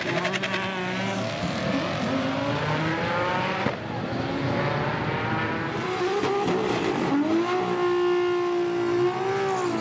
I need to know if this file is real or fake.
real